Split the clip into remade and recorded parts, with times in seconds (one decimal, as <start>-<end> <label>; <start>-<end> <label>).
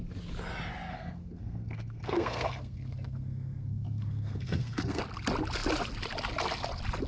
0.0-0.9 recorded; 0.9-5.0 remade; 5.0-7.1 recorded